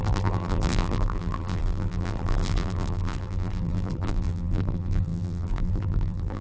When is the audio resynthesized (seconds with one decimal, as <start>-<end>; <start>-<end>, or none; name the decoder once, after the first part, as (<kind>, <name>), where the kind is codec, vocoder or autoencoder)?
0.0-6.4 (vocoder, BigVGAN v2)